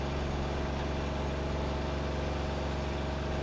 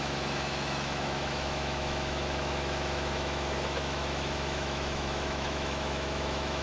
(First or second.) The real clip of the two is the first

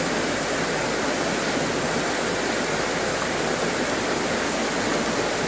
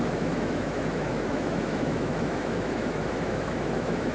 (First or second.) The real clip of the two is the first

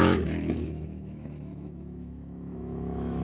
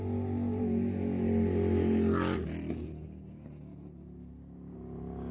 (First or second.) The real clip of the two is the second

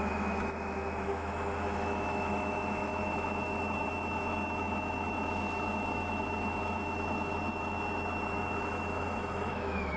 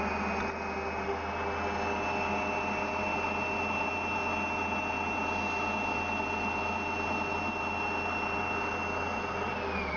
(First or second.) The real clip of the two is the second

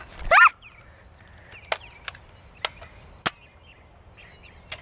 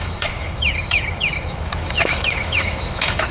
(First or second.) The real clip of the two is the first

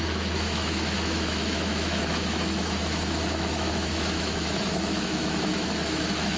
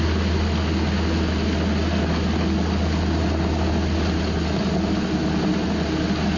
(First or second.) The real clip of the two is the second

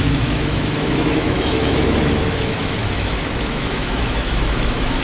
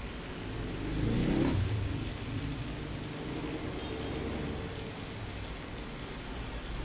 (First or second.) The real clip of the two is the second